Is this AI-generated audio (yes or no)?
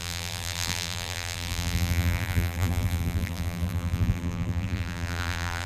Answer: yes